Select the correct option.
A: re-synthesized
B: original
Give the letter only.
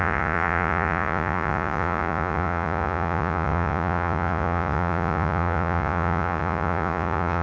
A